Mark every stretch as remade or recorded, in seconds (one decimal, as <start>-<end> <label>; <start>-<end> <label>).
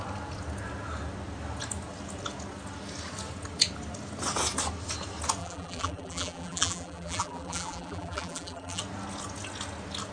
0.0-5.4 recorded; 5.4-8.8 remade; 8.8-10.1 recorded